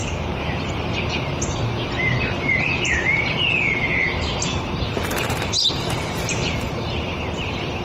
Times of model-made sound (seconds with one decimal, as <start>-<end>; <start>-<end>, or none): 0.0-7.8